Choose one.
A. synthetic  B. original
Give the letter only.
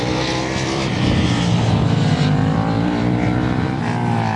A